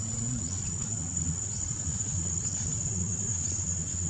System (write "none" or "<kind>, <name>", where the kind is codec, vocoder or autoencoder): vocoder, Vocos